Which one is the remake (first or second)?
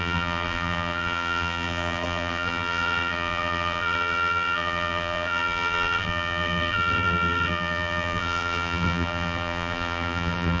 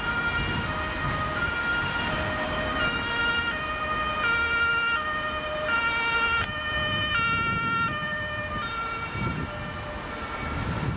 first